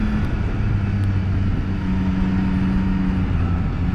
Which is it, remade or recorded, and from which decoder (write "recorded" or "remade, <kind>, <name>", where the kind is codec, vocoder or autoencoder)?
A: recorded